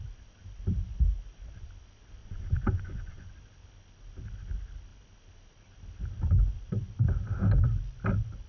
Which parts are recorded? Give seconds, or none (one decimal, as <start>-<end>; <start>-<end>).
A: 0.0-2.2; 3.3-8.5